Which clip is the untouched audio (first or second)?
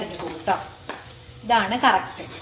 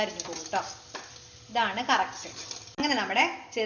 second